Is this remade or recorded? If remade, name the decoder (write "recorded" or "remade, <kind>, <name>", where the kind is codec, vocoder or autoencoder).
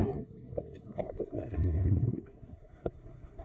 remade, codec, SNAC